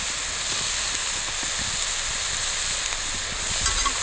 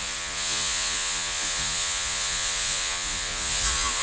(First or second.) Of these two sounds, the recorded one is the first